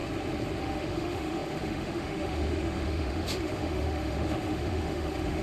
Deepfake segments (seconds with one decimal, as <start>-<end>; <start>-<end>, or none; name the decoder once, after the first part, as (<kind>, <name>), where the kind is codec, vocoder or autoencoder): 0.6-5.4 (autoencoder, DAC-VAE)